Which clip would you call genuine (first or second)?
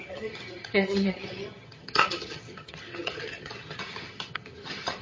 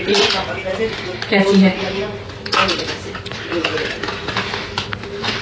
second